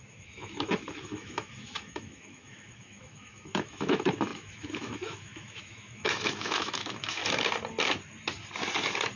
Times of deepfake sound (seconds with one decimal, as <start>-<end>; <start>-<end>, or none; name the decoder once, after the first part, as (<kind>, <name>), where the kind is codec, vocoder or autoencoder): 0.0-7.2 (autoencoder, DAC-VAE)